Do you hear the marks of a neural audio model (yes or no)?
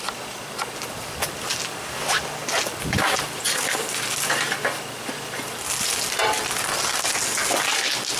no